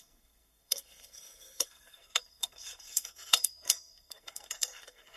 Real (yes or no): no